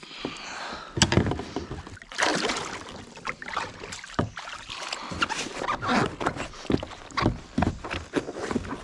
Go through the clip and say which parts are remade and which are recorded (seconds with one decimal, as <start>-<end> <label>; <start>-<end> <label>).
0.0-2.3 recorded; 2.3-4.3 remade; 4.3-8.8 recorded